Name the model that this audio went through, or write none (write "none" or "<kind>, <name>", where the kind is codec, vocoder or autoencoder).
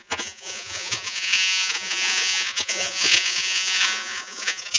vocoder, Vocos